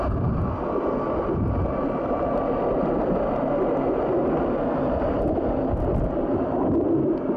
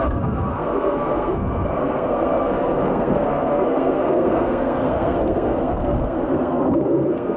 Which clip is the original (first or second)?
first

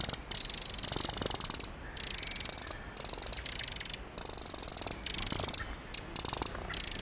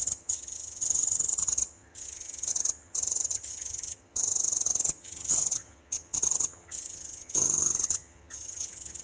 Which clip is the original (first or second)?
first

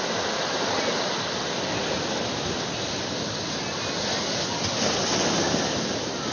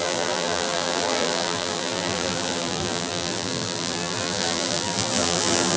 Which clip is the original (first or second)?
first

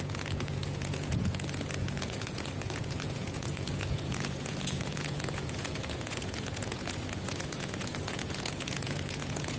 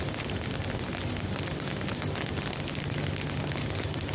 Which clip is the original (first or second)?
second